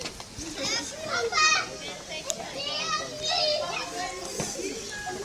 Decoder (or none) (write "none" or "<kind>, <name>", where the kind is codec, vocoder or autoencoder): none